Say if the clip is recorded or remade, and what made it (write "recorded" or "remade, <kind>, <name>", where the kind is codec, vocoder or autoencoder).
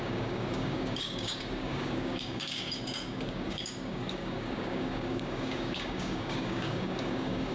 remade, codec, DAC